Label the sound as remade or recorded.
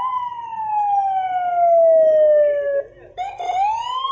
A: recorded